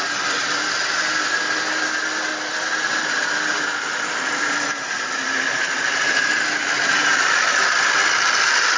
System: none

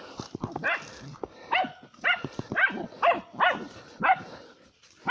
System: none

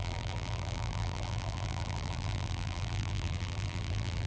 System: vocoder, BigVGAN v2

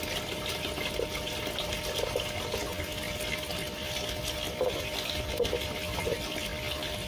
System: none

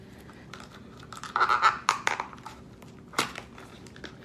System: none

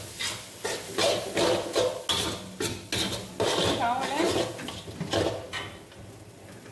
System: none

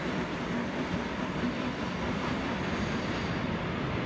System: vocoder, BigVGAN v2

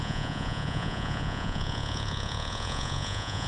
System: vocoder, Vocos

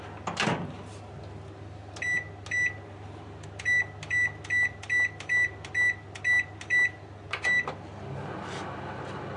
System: none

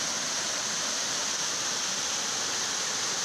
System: none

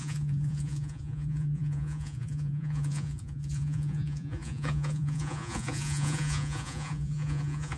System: vocoder, Vocos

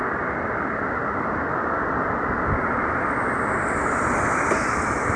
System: none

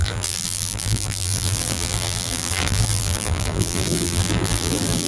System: vocoder, BigVGAN v2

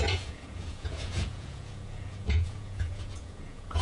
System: vocoder, Vocos